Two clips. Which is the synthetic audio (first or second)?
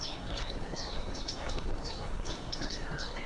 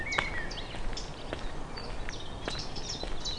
first